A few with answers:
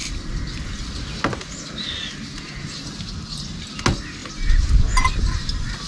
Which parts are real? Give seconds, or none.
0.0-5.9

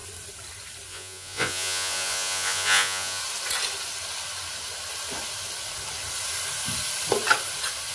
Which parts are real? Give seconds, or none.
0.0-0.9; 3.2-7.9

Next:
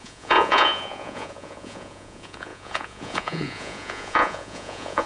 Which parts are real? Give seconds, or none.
none